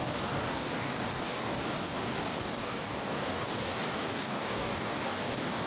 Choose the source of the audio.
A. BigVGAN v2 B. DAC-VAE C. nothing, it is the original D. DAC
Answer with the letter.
D